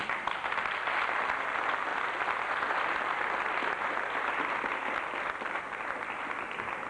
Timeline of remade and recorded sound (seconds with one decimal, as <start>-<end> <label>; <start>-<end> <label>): 0.0-6.9 recorded